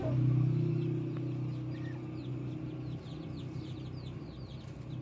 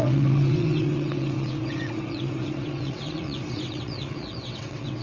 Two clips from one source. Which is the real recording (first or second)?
first